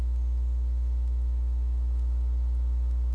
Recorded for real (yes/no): yes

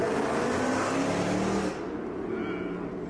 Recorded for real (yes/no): yes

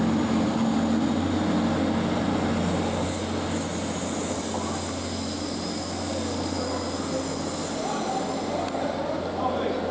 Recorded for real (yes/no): yes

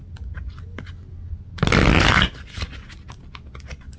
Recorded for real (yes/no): yes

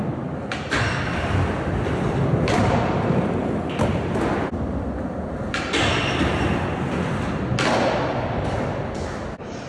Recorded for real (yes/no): yes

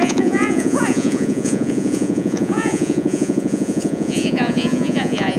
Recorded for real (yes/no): no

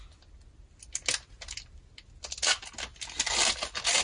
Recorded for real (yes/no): yes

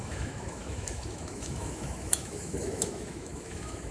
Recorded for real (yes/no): no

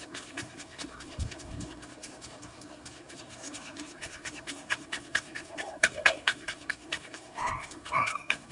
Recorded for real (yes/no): no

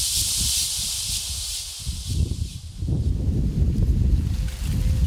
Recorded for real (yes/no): no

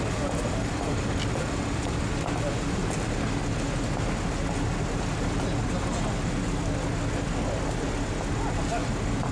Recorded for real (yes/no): yes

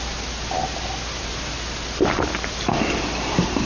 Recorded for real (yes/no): no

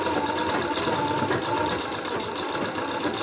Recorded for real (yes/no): no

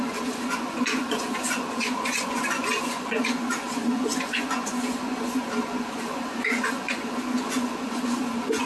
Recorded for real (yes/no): no